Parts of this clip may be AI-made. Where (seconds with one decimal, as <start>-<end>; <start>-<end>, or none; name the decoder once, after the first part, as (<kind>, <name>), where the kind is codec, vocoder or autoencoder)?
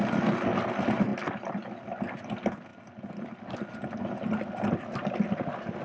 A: none